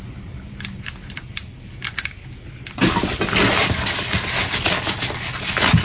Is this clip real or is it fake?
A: real